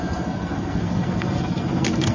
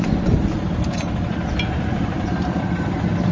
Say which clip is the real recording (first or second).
second